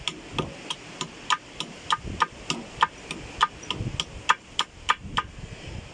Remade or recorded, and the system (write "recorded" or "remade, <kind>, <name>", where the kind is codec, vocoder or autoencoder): recorded